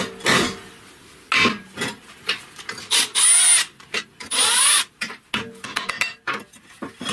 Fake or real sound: real